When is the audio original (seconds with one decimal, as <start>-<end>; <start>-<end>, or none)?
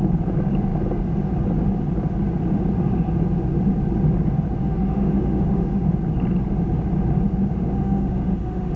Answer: 0.0-4.6; 5.9-7.5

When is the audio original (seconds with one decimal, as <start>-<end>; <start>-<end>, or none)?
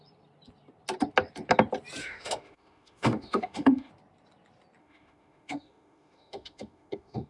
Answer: 0.0-2.0; 3.9-4.8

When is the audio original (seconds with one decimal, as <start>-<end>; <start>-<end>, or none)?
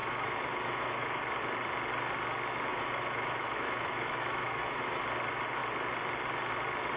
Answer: 1.3-2.7; 5.0-7.0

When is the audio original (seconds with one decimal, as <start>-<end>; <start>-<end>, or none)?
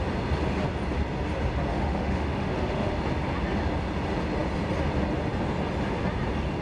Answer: 0.0-1.7; 2.9-6.6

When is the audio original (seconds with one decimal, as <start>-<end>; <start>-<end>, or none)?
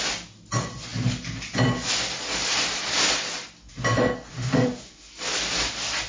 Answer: 0.0-4.3; 5.1-6.1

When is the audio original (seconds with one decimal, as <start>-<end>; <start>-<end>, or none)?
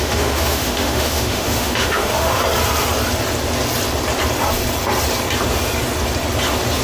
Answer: 2.4-6.8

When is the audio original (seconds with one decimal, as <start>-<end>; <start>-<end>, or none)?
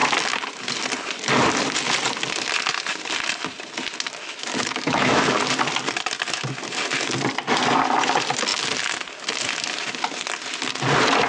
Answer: 0.0-4.2; 5.2-11.3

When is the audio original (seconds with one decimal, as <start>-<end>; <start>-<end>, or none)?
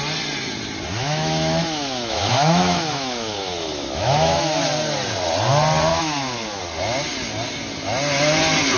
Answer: 0.0-1.0; 4.6-5.9; 6.6-8.8